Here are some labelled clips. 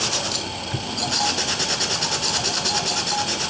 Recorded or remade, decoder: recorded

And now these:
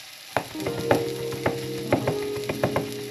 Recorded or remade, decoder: recorded